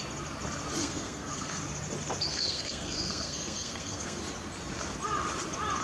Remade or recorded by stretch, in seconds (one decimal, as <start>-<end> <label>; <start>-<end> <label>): 0.0-0.8 recorded; 0.8-1.6 remade; 1.6-2.3 recorded; 2.3-4.2 remade; 4.2-5.8 recorded